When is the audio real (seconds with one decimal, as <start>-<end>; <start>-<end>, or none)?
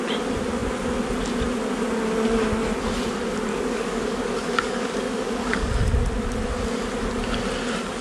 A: 0.0-3.5; 5.7-8.0